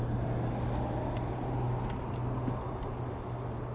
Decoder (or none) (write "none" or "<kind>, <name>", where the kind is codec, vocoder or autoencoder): none